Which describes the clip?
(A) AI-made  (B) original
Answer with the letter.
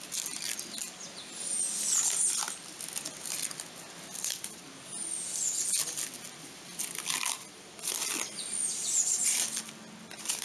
B